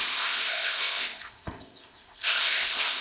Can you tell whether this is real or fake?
fake